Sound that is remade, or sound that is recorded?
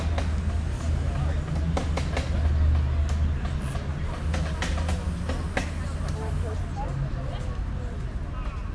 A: recorded